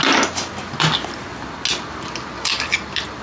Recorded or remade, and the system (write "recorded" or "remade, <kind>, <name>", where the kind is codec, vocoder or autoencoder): recorded